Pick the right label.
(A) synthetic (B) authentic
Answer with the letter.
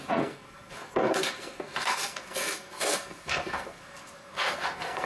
A